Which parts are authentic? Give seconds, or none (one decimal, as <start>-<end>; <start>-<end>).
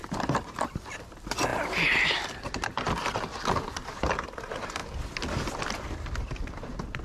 0.0-7.0